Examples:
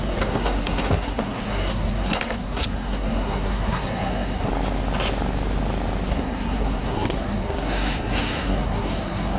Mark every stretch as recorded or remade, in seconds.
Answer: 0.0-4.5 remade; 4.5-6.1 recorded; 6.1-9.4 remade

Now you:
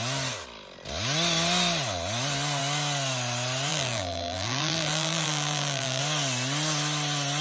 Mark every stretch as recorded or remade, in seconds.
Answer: 0.0-3.7 recorded; 3.7-6.0 remade; 6.0-7.4 recorded

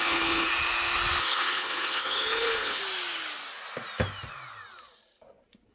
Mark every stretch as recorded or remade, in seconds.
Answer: 0.0-0.5 remade; 0.5-1.2 recorded; 1.2-2.8 remade; 2.8-5.7 recorded

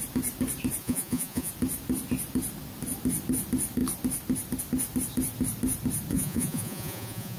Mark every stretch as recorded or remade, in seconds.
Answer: 0.0-0.8 recorded; 0.8-1.5 remade; 1.5-6.1 recorded; 6.1-7.4 remade

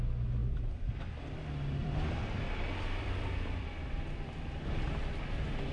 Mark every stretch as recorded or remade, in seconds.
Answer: 0.0-0.4 recorded; 0.4-1.1 remade; 1.1-1.8 recorded; 1.8-5.2 remade; 5.2-5.7 recorded

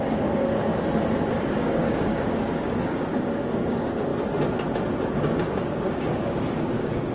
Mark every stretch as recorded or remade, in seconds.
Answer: 0.0-0.7 remade; 0.7-1.4 recorded; 1.4-4.1 remade; 4.1-5.1 recorded; 5.1-7.1 remade

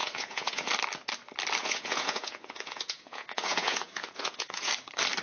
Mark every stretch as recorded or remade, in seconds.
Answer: 0.0-0.7 remade; 0.7-1.6 recorded; 1.6-4.7 remade; 4.7-5.2 recorded

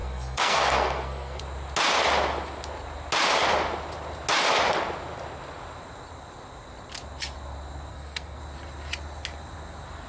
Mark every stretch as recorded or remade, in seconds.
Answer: 0.0-1.4 remade; 1.4-7.9 recorded; 7.9-8.4 remade; 8.4-10.1 recorded